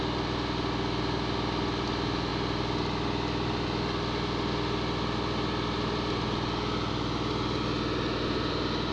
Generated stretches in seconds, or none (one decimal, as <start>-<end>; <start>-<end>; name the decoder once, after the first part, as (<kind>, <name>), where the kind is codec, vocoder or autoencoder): none